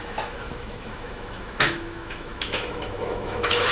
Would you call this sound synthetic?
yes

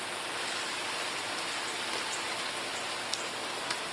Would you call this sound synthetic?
no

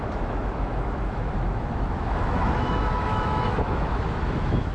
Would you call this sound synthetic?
yes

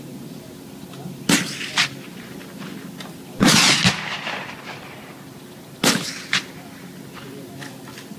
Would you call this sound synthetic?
no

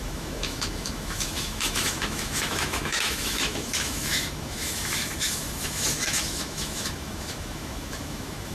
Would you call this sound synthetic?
yes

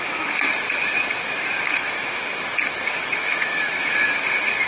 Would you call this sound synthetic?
yes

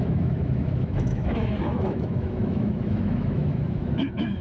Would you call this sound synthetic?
yes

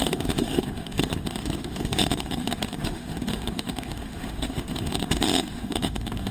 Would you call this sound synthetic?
yes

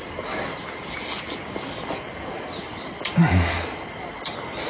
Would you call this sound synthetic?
no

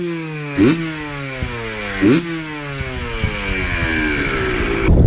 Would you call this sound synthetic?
no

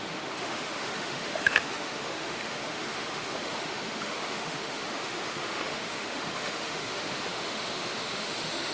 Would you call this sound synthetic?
yes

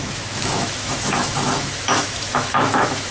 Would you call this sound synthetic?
yes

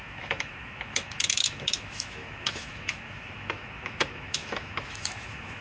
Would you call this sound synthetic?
yes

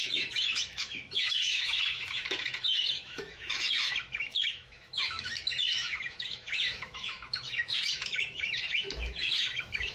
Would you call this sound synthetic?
yes